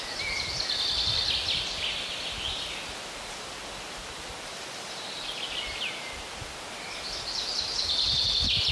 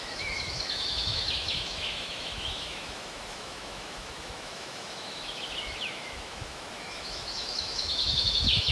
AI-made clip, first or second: second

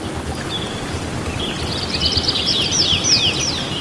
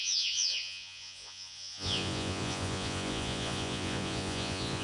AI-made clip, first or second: second